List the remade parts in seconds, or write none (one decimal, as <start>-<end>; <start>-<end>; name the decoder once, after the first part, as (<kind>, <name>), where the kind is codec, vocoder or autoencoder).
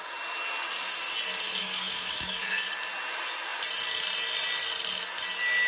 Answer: 1.6-2.7 (codec, DAC)